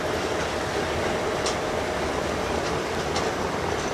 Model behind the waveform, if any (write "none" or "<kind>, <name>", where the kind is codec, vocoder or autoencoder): none